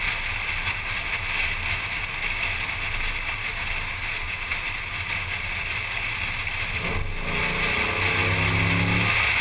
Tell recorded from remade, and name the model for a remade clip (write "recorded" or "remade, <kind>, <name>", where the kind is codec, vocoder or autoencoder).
recorded